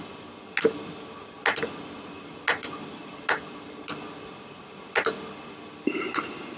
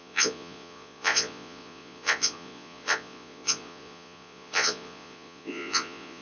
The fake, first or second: second